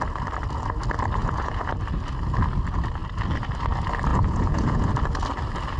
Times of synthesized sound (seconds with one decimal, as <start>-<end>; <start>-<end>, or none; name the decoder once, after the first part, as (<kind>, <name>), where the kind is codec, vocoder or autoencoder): 1.2-1.7 (vocoder, Vocos); 4.1-4.9

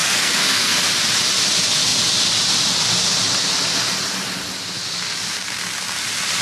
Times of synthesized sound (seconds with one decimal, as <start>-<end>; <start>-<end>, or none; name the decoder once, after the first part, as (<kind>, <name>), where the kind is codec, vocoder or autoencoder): 0.0-0.8 (codec, SNAC)

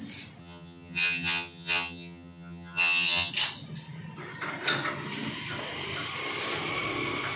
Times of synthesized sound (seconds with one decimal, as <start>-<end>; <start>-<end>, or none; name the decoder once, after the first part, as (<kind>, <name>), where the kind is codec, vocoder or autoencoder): 0.4-3.3 (vocoder, HiFi-GAN)

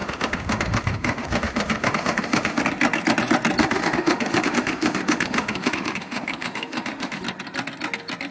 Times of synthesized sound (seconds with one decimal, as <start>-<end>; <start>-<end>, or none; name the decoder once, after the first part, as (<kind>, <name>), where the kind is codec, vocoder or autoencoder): 0.0-2.6 (autoencoder, DAC-VAE); 3.6-7.2

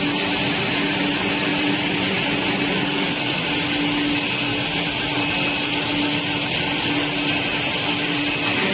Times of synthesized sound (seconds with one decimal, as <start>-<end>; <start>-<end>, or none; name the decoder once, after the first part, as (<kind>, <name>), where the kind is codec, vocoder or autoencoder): 1.5-3.4 (vocoder, BigVGAN v2)